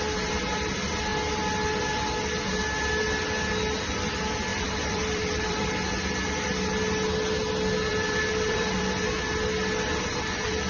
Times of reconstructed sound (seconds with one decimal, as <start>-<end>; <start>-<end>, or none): 4.5-5.7; 7.9-9.0